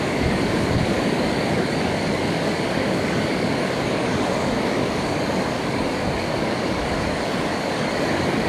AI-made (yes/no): yes